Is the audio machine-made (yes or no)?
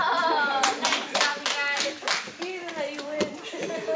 no